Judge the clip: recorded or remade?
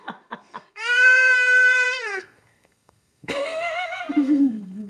remade